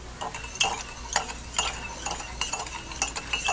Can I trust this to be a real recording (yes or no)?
yes